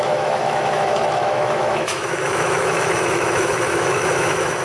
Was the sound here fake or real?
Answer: fake